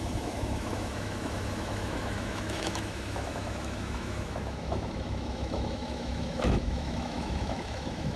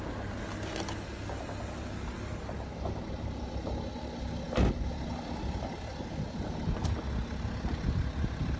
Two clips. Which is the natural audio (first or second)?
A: second